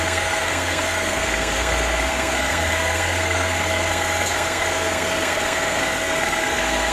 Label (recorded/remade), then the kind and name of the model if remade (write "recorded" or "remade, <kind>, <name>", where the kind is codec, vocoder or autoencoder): remade, codec, SNAC